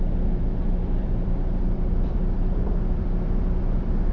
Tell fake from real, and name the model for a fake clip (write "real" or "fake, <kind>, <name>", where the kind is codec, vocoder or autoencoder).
fake, vocoder, BigVGAN v2